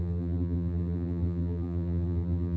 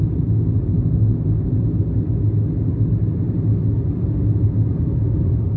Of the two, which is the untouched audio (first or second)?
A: second